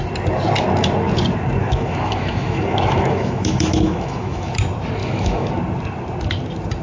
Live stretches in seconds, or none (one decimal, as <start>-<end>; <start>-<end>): 0.0-1.6; 4.5-5.0; 5.5-6.8